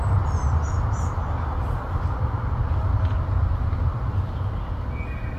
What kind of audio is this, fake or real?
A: real